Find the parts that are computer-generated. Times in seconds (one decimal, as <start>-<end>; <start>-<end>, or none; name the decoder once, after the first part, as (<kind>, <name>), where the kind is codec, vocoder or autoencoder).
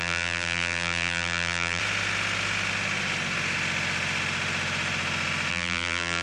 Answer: 0.0-1.8 (vocoder, BigVGAN v2); 5.5-6.2